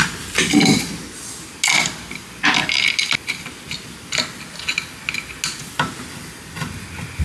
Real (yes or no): yes